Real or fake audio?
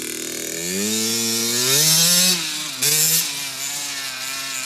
real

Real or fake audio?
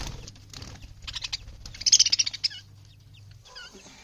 real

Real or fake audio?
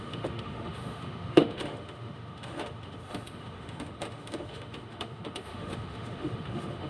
fake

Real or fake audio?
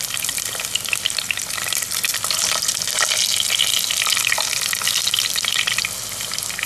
real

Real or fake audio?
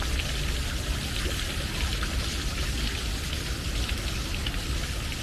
real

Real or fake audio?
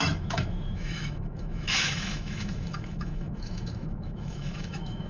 fake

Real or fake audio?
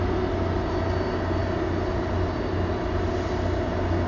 real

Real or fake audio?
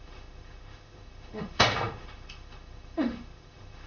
fake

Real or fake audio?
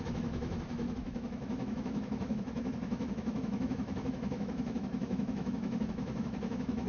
fake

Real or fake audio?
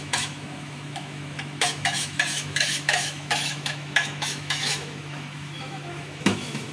fake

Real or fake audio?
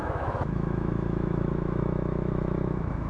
fake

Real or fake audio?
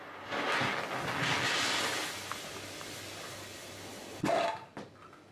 real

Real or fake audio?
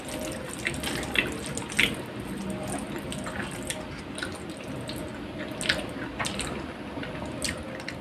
real